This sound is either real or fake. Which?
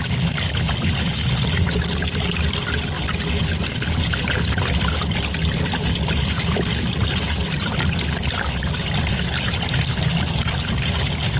real